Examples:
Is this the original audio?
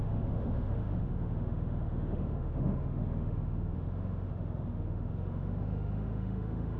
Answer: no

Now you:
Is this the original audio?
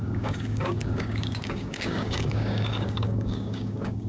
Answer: no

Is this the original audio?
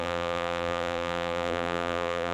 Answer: no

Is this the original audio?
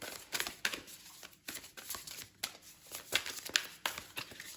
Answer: yes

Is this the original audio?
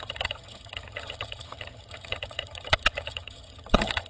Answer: no